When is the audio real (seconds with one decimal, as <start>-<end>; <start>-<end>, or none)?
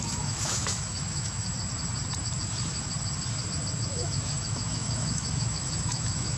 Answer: 1.5-3.9